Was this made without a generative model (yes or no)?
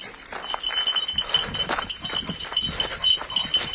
yes